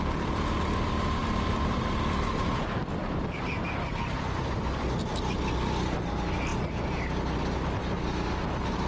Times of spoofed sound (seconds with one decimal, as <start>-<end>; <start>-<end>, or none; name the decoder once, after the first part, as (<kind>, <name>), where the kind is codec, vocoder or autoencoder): none